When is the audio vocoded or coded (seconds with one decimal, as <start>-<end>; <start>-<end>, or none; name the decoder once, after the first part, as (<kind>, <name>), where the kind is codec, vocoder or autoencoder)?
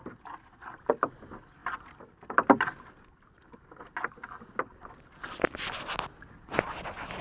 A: none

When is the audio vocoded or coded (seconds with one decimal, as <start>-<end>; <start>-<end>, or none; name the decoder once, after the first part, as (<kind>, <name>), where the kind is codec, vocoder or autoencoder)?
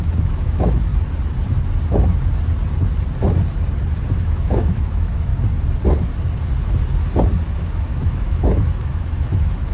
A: 0.0-0.9 (autoencoder, DAC-VAE); 4.0-5.3; 7.6-9.7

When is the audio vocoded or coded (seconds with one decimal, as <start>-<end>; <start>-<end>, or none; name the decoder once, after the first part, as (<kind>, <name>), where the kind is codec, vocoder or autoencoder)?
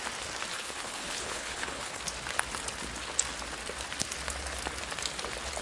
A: 0.5-2.0 (codec, HILCodec)